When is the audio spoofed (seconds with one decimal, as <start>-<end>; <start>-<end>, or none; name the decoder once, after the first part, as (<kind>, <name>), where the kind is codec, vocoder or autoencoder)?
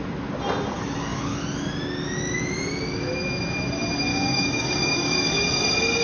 4.1-5.3 (codec, DAC)